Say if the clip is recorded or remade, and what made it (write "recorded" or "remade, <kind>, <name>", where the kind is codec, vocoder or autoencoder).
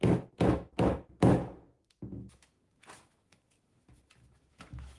remade, autoencoder, DAC-VAE